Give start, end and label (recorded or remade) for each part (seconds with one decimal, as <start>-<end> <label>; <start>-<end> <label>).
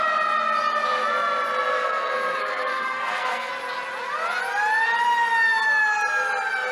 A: 0.0-1.7 recorded; 1.7-3.5 remade; 3.5-6.7 recorded